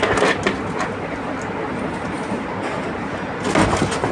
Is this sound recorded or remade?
recorded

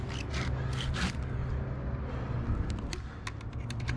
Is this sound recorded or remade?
recorded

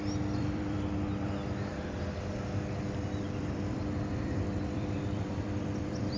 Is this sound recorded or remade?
remade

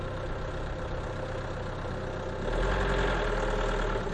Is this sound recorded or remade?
recorded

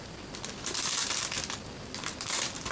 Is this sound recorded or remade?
recorded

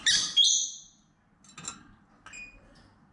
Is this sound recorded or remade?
recorded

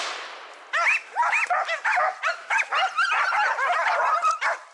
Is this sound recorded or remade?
recorded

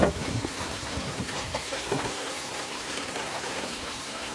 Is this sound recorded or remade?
remade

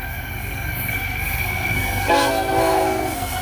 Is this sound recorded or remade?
remade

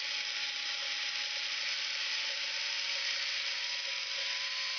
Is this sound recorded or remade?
recorded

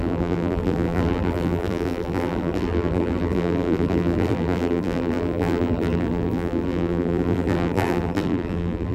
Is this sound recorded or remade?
remade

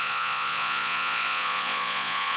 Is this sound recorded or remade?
remade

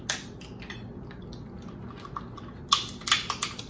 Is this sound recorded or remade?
recorded